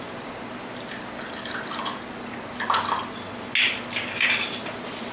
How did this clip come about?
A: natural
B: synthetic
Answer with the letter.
A